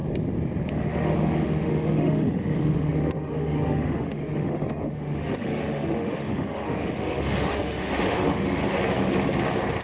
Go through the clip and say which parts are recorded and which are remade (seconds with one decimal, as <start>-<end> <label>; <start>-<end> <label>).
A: 0.0-0.7 recorded; 0.7-8.6 remade; 8.6-9.8 recorded